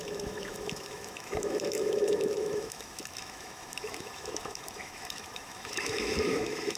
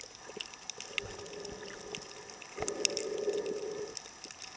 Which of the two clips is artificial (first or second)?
first